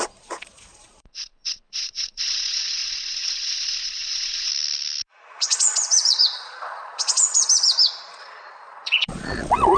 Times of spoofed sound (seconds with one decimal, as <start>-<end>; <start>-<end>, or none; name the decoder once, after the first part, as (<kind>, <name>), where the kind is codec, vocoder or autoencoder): 0.0-4.5 (vocoder, Vocos); 5.1-9.8